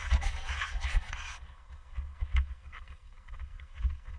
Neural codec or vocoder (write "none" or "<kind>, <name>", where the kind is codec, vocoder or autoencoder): codec, SNAC